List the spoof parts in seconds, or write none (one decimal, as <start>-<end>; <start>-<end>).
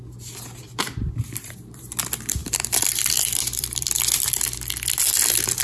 2.4-4.3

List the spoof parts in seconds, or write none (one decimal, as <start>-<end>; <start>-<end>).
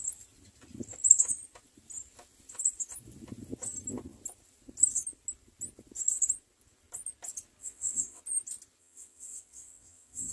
7.6-8.2; 8.8-10.3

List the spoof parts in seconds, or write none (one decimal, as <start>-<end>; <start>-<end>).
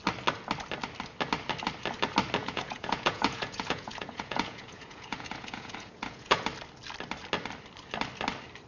2.4-6.4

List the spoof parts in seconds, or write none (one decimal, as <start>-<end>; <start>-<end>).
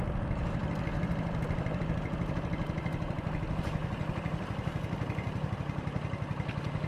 0.6-1.8; 3.8-5.6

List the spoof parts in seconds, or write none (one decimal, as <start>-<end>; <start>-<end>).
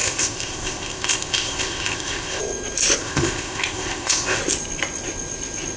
0.0-2.4; 3.0-4.4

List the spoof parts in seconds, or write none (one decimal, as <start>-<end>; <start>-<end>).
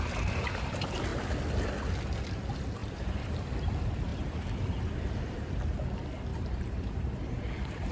2.8-3.5; 4.1-5.5; 6.3-7.9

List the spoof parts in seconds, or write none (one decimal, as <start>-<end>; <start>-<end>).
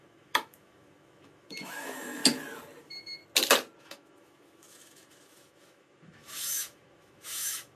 0.0-2.2; 2.8-3.2; 3.8-7.8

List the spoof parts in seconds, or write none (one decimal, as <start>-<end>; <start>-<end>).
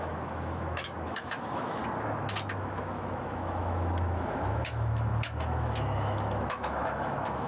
0.0-1.8; 2.6-7.5